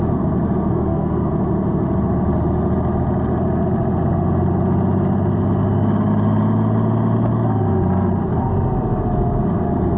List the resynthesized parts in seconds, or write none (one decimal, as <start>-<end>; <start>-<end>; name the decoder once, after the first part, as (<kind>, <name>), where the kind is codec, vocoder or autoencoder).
0.7-1.3 (codec, SNAC)